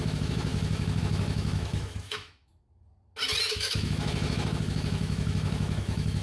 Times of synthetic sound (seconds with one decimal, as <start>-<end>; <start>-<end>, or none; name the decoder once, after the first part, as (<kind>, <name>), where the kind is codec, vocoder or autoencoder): 0.0-2.5 (autoencoder, DAC-VAE); 3.5-6.2